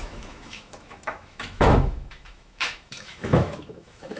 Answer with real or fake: fake